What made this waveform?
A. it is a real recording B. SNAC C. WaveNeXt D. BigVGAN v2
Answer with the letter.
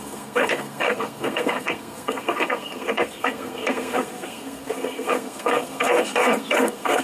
B